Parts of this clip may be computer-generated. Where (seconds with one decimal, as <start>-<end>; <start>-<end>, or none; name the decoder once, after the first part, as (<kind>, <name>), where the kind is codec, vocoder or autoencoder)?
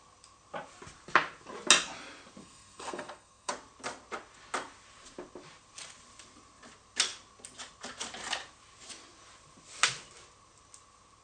2.4-3.5 (codec, SNAC)